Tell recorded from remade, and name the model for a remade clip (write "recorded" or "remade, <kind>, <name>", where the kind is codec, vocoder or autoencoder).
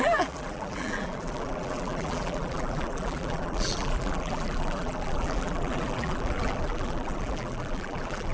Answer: remade, vocoder, BigVGAN v2